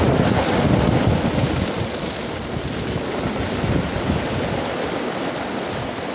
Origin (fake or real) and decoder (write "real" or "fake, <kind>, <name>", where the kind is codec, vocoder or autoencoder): real